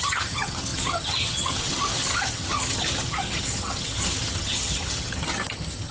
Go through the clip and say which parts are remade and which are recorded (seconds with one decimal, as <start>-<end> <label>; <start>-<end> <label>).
0.0-5.9 remade